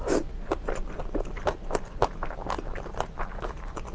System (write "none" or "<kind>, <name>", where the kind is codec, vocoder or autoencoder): none